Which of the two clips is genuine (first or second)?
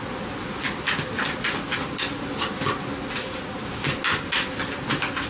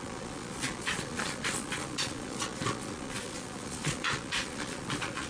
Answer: first